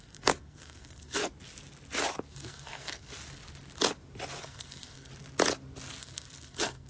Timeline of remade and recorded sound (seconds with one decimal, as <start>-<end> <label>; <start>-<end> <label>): 0.0-1.2 remade; 1.2-2.3 recorded; 2.3-3.1 remade; 3.1-4.4 recorded; 4.4-5.1 remade; 5.1-6.0 recorded; 6.0-6.9 remade